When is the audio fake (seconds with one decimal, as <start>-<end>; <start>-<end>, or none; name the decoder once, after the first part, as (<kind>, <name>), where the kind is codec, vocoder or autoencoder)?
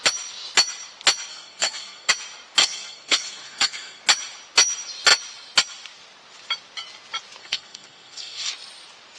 1.3-2.1 (codec, SNAC); 2.6-4.0; 7.4-8.5